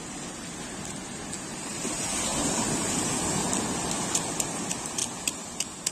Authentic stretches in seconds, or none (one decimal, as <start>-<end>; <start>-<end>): 0.0-5.9